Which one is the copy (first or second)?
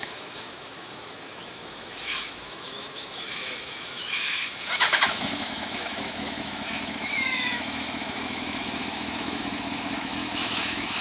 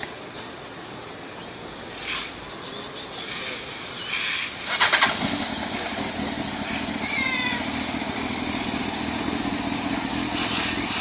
first